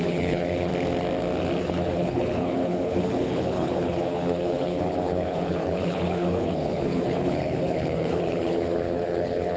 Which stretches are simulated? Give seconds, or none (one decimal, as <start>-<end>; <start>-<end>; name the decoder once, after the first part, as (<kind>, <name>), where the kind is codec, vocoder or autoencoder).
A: 0.0-0.7 (codec, HILCodec); 1.6-9.6